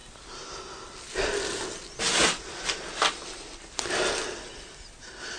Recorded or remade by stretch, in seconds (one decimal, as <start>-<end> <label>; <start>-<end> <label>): 0.0-5.4 recorded